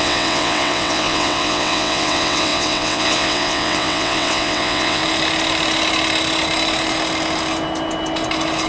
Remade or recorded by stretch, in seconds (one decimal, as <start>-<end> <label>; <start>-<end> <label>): 0.0-5.0 remade; 5.0-8.7 recorded